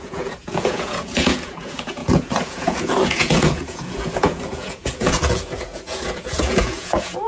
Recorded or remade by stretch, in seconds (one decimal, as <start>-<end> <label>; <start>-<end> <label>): 0.0-7.3 remade